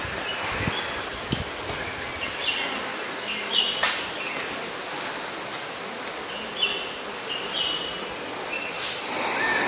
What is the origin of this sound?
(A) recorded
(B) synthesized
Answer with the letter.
A